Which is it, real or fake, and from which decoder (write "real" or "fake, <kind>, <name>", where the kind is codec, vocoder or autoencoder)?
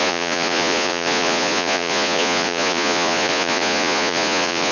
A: fake, vocoder, Vocos